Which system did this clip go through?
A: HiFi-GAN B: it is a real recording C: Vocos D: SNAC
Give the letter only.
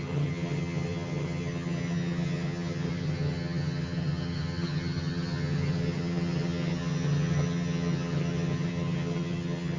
A